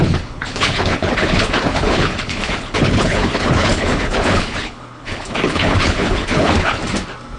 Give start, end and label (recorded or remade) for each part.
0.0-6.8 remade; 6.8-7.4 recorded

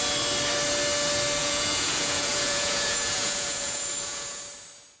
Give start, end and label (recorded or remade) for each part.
0.0-1.4 recorded; 1.4-4.4 remade; 4.4-5.0 recorded

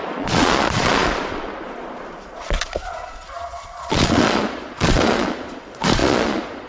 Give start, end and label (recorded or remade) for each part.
0.0-6.7 remade

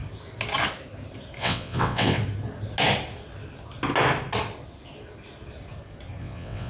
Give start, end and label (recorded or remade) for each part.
0.0-1.4 recorded; 1.4-2.2 remade; 2.2-6.2 recorded; 6.2-6.7 remade